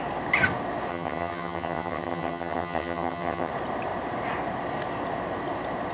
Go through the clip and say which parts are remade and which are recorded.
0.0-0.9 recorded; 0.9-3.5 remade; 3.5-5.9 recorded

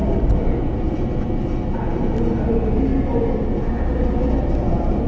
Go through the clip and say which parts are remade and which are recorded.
0.0-5.1 recorded

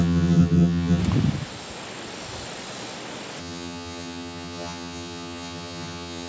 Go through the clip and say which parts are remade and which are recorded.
0.0-1.0 remade; 1.0-3.4 recorded; 3.4-6.3 remade

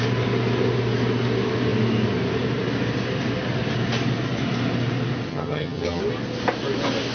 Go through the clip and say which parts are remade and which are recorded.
0.0-5.3 recorded; 5.3-6.0 remade; 6.0-7.1 recorded

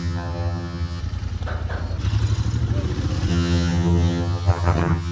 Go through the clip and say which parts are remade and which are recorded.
0.0-1.0 remade; 1.0-3.3 recorded; 3.3-5.1 remade

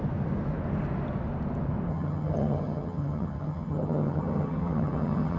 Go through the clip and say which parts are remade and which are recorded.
0.0-1.9 recorded; 1.9-5.4 remade